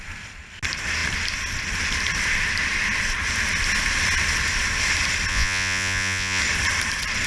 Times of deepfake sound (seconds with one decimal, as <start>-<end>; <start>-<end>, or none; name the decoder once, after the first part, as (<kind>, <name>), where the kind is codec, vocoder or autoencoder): 5.3-6.4 (vocoder, Vocos)